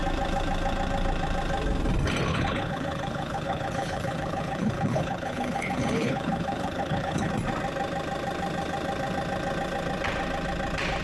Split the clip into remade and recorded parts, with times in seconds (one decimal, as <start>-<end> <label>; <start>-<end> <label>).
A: 0.0-2.3 recorded; 2.3-7.3 remade; 7.3-11.0 recorded